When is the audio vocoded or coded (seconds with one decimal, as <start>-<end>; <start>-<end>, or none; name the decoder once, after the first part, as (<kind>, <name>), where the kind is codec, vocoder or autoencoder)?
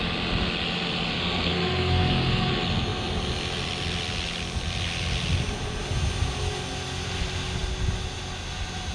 1.1-2.5 (codec, SNAC)